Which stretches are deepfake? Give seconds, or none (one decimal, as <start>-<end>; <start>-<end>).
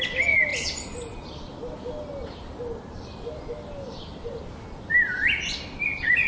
none